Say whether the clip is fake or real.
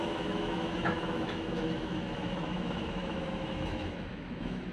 fake